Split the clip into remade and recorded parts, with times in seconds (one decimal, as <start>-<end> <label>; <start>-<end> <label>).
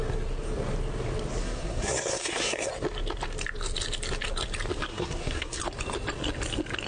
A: 0.0-1.4 recorded; 1.4-2.7 remade; 2.7-4.9 recorded; 4.9-5.6 remade; 5.6-6.9 recorded